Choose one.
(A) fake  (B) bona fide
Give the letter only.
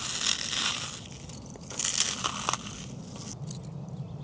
B